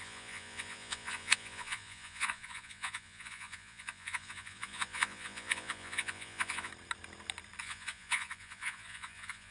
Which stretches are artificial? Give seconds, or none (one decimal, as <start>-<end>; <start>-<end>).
0.0-6.7; 7.6-9.5